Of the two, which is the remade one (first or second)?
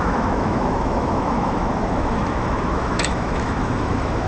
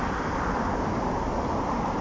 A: first